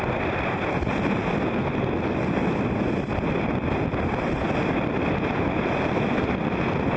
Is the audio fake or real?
real